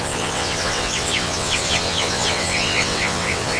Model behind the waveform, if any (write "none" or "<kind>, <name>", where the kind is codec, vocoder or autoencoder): vocoder, WaveNeXt